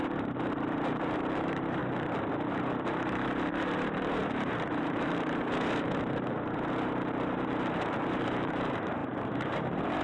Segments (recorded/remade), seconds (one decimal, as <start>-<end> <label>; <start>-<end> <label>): 0.0-1.8 remade; 1.8-2.5 recorded; 2.5-10.0 remade